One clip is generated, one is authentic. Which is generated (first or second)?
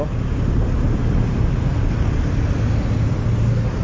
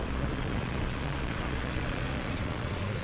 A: second